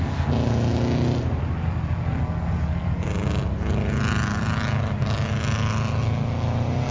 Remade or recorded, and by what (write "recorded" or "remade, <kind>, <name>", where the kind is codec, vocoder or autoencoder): recorded